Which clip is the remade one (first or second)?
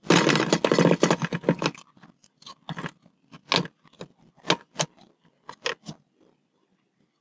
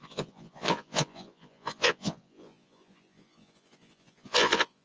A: second